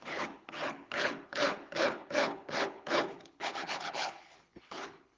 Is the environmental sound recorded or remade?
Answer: remade